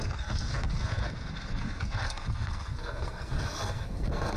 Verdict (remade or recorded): remade